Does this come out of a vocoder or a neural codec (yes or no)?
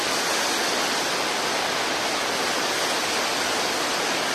no